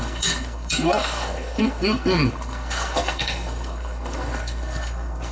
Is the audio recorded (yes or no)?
no